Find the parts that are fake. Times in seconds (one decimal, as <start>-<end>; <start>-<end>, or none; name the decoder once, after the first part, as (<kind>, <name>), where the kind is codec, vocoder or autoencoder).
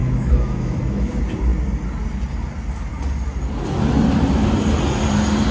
0.0-1.1 (autoencoder, DAC-VAE)